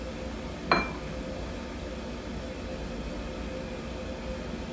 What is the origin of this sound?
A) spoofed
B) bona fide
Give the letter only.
B